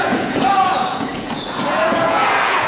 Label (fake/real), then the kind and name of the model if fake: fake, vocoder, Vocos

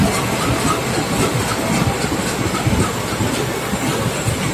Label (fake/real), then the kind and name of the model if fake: real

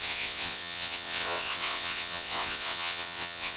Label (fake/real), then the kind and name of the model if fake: fake, vocoder, WaveNeXt